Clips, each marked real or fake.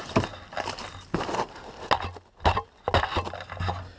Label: real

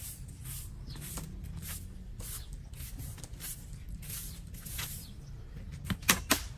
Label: real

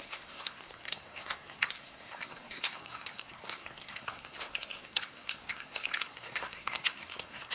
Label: fake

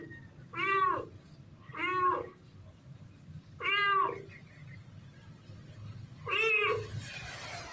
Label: real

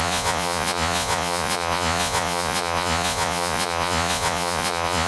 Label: fake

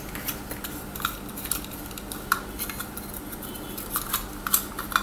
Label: real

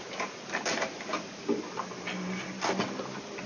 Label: real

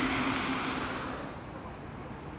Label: real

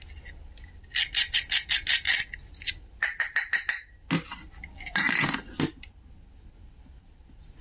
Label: real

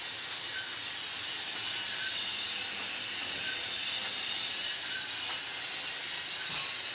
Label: real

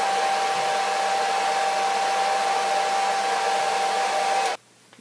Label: real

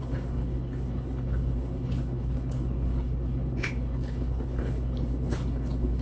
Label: fake